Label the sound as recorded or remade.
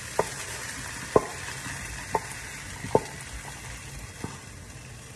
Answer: recorded